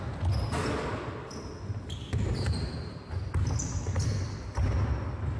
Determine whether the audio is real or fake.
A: real